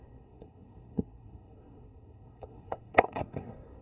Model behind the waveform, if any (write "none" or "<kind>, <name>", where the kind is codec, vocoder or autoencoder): codec, SNAC